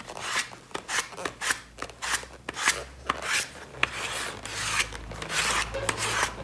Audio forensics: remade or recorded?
recorded